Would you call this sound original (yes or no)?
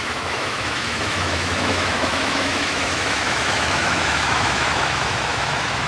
no